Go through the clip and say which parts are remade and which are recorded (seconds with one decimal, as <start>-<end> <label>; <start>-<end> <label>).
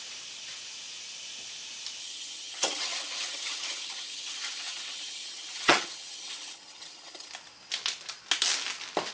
0.0-2.0 recorded; 2.0-7.3 remade; 7.3-9.1 recorded